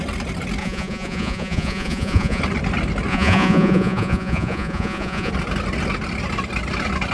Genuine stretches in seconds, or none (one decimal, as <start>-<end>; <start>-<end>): 0.0-0.6; 2.4-3.1; 5.3-7.1